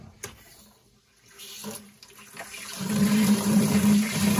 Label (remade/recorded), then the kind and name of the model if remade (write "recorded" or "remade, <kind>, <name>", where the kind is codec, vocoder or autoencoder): remade, vocoder, BigVGAN v2